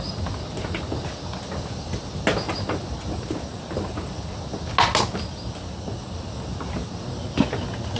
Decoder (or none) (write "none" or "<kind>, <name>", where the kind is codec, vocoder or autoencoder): none